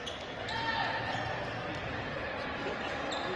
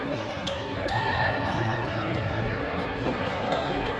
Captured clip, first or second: first